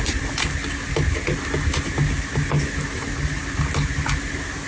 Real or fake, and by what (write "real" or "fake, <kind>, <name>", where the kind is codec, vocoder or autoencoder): real